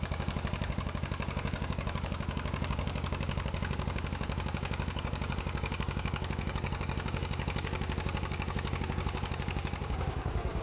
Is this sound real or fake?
fake